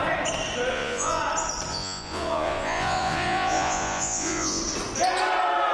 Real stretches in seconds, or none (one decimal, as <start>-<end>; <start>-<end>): 0.0-0.7; 1.2-1.7; 4.6-5.7

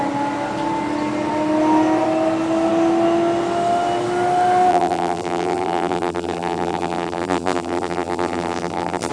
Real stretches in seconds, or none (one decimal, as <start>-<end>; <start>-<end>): 0.0-4.7

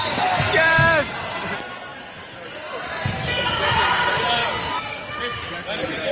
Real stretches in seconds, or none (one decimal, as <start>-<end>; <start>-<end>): 0.0-6.1

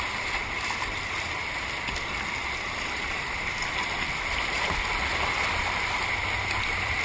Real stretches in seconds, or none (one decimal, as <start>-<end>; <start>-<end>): 0.0-7.0

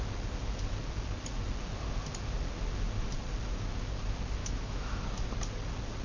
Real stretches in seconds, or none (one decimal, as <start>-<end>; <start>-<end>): 0.0-4.4; 5.0-6.0

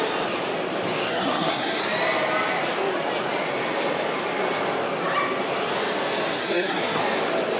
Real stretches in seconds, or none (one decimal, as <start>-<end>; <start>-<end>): 0.0-1.1; 1.8-6.4; 7.0-7.6

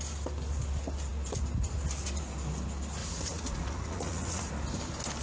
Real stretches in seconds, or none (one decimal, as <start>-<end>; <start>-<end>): 0.0-3.0; 4.5-5.2

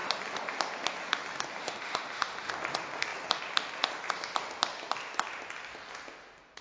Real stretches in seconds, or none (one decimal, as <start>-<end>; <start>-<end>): 0.0-1.6; 2.5-6.6